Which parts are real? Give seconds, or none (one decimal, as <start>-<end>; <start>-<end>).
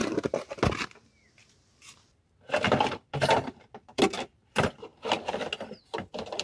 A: 0.5-1.4; 4.0-6.4